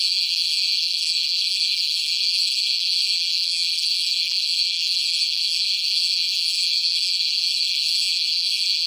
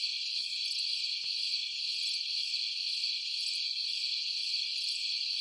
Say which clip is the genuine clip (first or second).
second